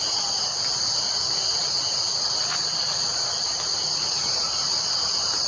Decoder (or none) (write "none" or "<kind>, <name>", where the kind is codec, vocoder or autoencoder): none